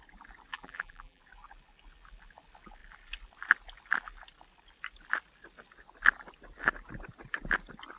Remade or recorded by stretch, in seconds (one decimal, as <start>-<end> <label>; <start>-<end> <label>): 0.0-0.5 recorded; 0.5-1.2 remade; 1.2-8.0 recorded